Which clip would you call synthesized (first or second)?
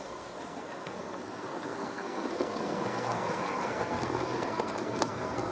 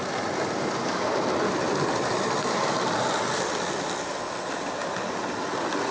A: first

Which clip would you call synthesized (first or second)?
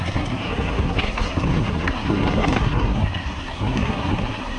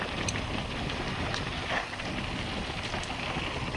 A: first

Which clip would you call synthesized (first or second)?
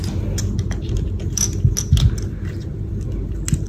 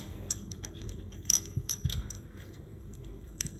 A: second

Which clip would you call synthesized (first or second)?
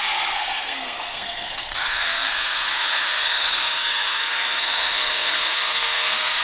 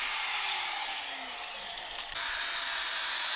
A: first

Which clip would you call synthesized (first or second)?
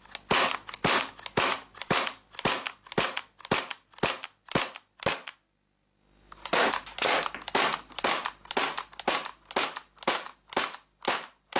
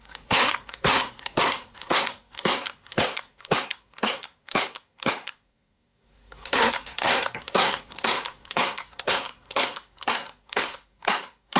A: second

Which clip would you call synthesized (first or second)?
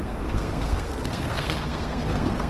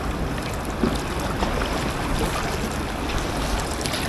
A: first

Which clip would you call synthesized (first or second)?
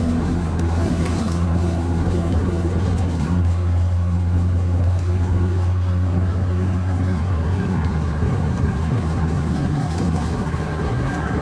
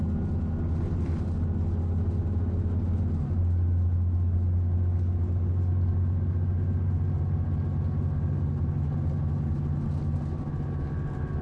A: first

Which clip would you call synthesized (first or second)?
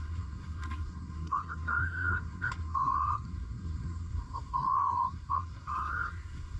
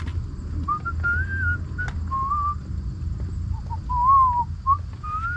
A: first